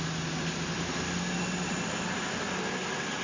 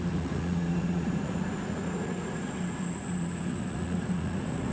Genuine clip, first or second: first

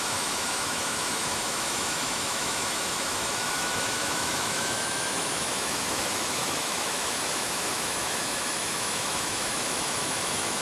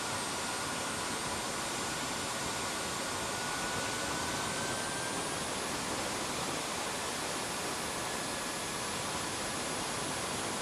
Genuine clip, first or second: second